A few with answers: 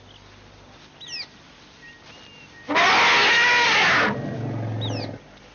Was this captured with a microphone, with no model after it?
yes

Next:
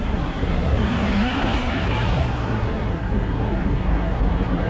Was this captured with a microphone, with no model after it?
no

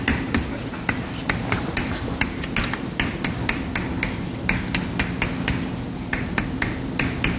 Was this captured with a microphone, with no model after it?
yes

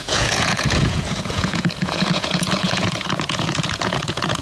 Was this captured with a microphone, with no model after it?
no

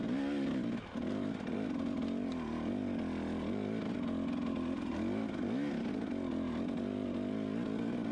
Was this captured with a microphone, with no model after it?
yes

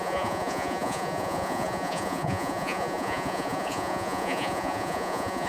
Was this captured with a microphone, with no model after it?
no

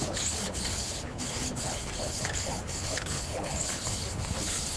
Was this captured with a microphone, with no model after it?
no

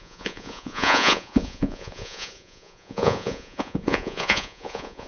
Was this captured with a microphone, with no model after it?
no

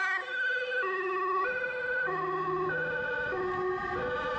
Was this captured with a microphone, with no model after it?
yes